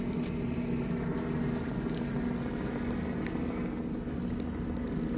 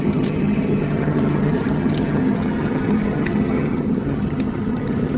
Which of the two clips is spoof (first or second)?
second